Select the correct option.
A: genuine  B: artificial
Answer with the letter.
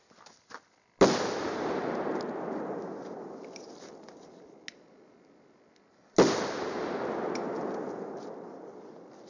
A